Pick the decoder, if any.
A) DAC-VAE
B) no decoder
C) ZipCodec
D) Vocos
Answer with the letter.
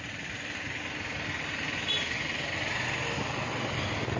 B